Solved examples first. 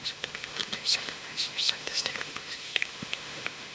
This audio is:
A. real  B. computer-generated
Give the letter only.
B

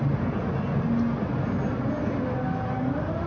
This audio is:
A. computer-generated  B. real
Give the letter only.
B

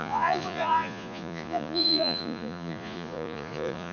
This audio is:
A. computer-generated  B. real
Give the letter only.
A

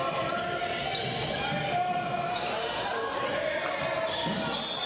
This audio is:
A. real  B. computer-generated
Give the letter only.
A